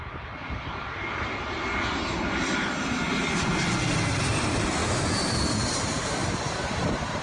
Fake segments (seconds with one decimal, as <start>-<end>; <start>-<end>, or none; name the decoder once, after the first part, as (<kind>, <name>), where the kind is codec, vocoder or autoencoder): 4.8-5.3 (vocoder, BigVGAN v2); 6.2-7.2